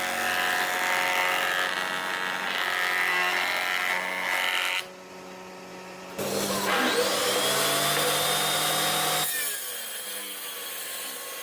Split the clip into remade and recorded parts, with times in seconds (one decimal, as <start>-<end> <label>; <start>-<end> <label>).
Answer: 0.0-5.7 recorded; 5.7-6.8 remade; 6.8-11.4 recorded